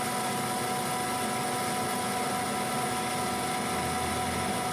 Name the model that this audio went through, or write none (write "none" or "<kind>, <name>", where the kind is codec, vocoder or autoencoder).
none